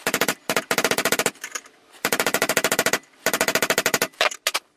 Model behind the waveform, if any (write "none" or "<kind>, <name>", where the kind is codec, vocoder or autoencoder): none